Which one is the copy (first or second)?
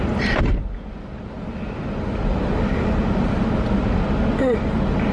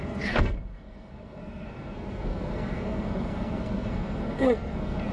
second